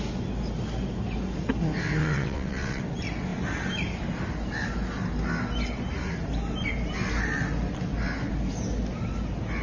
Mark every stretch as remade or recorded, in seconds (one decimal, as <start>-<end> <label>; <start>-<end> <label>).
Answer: 0.0-2.0 recorded; 2.0-2.8 remade; 2.8-9.6 recorded